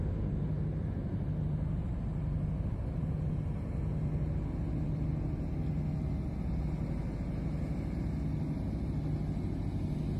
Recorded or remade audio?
recorded